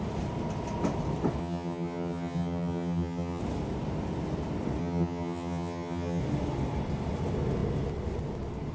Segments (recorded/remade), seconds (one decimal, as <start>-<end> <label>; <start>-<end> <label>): 0.0-1.4 recorded; 1.4-3.4 remade; 3.4-4.8 recorded; 4.8-6.2 remade; 6.2-8.7 recorded